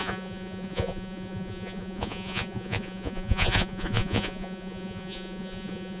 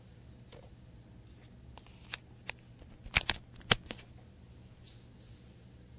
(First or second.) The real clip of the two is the second